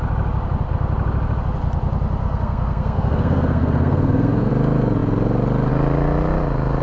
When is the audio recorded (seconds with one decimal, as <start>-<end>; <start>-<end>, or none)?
0.0-2.2; 4.5-6.8